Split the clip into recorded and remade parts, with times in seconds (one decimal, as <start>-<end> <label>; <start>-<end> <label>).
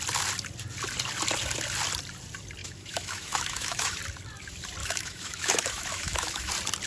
0.0-2.6 recorded; 2.6-4.0 remade; 4.0-4.8 recorded; 4.8-6.5 remade; 6.5-6.9 recorded